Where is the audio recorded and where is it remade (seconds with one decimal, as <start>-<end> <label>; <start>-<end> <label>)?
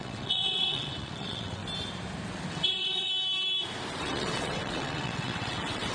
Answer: 0.0-1.6 remade; 1.6-2.5 recorded; 2.5-3.1 remade; 3.1-4.0 recorded; 4.0-5.9 remade